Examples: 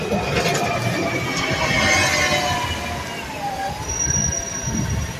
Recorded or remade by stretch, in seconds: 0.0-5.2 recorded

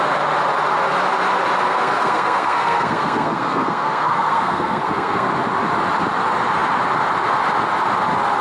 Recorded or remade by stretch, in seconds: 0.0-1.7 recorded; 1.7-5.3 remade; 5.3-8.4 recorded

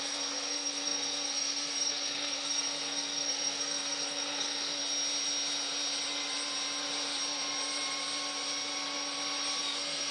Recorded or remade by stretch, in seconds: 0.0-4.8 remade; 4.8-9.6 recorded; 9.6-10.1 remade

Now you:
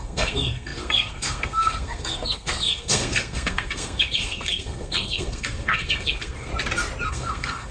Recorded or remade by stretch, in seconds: 0.0-6.5 remade; 6.5-7.1 recorded; 7.1-7.7 remade

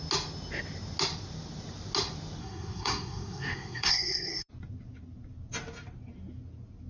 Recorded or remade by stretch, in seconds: 0.0-2.4 recorded; 2.4-4.5 remade; 4.5-6.9 recorded

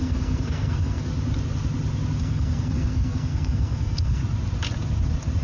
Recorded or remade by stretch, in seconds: 0.0-1.1 remade; 1.1-2.2 recorded; 2.2-4.2 remade; 4.2-5.4 recorded